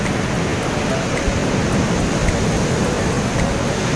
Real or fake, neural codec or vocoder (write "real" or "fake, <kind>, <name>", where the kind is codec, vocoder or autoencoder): real